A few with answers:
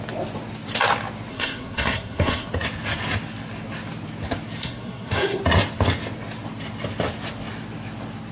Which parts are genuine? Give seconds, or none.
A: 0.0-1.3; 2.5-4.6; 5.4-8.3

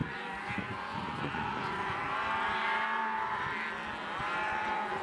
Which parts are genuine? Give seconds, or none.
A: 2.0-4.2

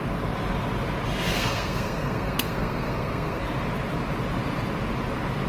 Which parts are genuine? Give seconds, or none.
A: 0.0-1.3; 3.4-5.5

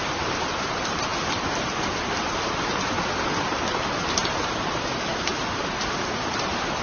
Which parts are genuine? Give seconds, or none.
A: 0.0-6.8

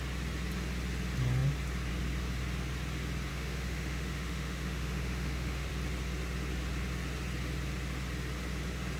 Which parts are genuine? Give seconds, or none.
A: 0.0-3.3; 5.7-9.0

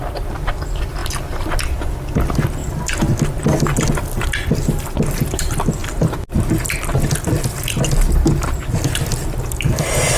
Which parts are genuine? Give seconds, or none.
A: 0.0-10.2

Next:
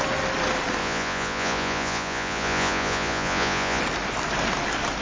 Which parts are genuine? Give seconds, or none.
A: 0.0-0.8; 3.8-5.0

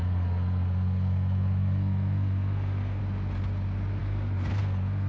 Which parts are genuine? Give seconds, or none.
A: 3.0-4.0